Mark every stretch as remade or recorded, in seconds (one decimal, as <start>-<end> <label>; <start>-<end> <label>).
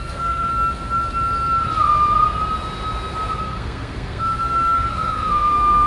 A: 0.0-0.5 remade; 0.5-3.4 recorded; 3.4-5.9 remade